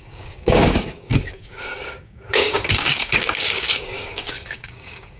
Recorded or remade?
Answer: remade